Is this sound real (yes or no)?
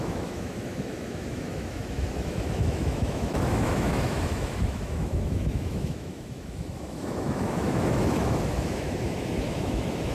no